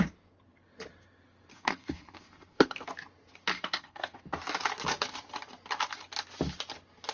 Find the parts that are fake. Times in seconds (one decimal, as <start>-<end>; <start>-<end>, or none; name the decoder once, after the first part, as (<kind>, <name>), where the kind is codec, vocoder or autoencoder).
1.5-2.9 (codec, SNAC); 3.5-4.2